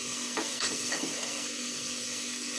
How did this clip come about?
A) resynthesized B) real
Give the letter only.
A